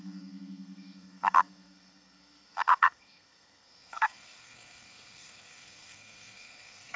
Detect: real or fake fake